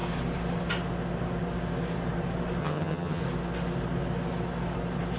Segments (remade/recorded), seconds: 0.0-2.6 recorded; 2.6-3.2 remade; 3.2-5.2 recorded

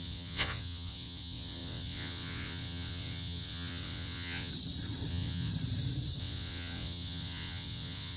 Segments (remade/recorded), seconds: 0.0-4.5 remade; 4.5-5.1 recorded; 5.1-5.5 remade; 5.5-6.2 recorded; 6.2-8.2 remade

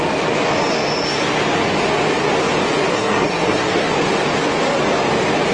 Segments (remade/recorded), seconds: 0.0-2.9 recorded; 2.9-3.9 remade; 3.9-5.5 recorded

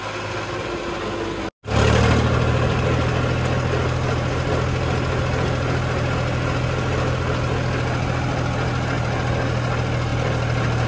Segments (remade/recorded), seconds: 0.0-10.9 recorded